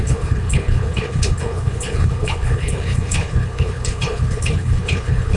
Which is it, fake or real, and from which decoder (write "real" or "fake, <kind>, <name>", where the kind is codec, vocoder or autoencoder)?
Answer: fake, codec, HILCodec